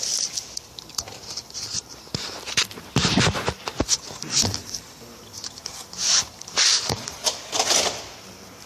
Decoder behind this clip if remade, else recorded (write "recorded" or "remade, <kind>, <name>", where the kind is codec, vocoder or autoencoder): remade, vocoder, BigVGAN v2